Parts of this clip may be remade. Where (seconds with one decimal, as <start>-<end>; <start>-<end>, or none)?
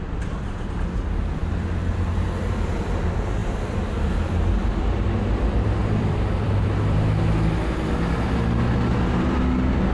1.4-2.0; 3.4-4.5; 5.8-7.2